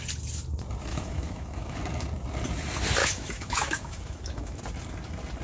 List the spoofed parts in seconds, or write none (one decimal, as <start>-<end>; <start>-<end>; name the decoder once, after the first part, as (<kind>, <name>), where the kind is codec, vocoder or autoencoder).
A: 0.9-1.8 (autoencoder, DAC-VAE); 3.0-4.6